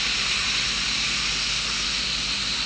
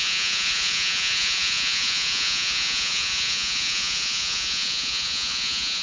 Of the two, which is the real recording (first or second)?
first